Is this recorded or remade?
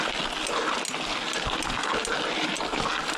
recorded